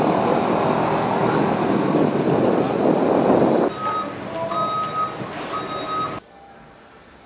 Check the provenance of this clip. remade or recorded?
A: recorded